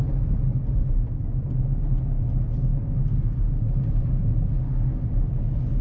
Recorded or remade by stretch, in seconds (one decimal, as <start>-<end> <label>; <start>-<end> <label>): 0.0-5.8 recorded